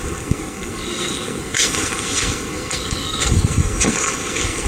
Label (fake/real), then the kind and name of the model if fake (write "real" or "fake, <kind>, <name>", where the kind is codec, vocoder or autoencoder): fake, codec, SNAC